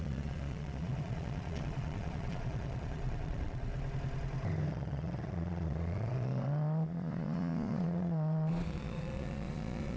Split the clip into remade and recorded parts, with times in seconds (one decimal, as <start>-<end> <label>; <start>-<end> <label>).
0.0-3.7 remade; 3.7-4.7 recorded; 4.7-10.0 remade